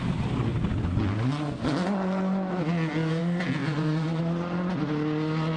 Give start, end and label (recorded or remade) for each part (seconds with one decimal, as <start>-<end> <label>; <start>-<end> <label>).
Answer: 0.0-3.6 recorded; 3.6-4.2 remade; 4.2-5.6 recorded